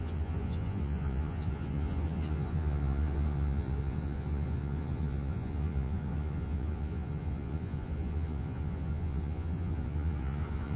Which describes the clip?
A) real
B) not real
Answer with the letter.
B